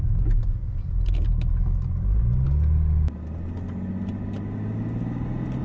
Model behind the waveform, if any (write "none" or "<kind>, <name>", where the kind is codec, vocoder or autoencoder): none